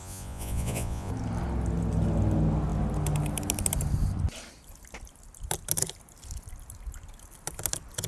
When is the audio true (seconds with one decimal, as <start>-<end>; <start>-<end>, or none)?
1.1-8.1